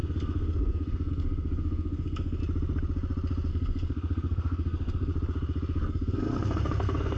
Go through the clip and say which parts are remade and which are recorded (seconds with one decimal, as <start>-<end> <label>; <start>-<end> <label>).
0.0-2.4 remade; 2.4-3.5 recorded; 3.5-5.1 remade; 5.1-5.9 recorded; 5.9-7.2 remade